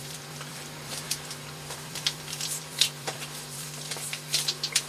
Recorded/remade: remade